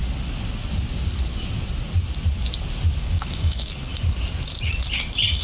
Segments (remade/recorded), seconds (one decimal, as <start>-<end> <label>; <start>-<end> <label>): 0.0-3.0 recorded; 3.0-3.9 remade; 3.9-5.4 recorded